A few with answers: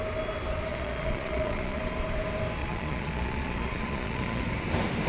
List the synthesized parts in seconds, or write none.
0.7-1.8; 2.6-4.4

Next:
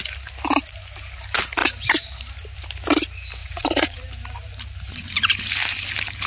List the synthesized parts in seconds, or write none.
3.4-4.0

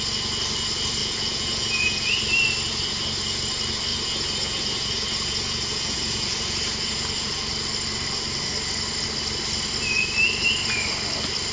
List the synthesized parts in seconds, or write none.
1.0-2.2; 3.9-7.5

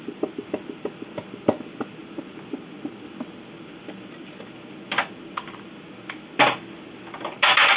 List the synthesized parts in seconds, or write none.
none

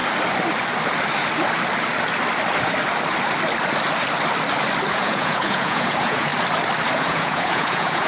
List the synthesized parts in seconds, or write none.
4.9-6.3; 7.0-8.1

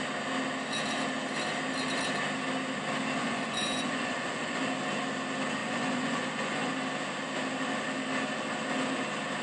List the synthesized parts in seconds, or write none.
3.2-4.6; 5.6-6.7

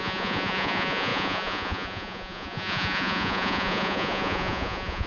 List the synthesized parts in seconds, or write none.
0.0-5.1

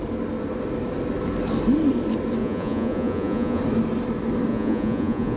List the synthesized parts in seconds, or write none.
2.4-3.6; 4.5-5.4